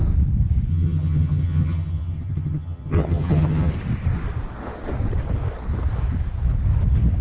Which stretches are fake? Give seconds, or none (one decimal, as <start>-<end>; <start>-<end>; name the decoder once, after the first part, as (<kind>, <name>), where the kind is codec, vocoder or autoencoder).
0.7-3.7 (vocoder, HiFi-GAN)